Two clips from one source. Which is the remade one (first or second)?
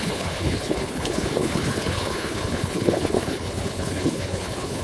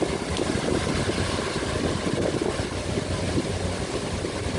first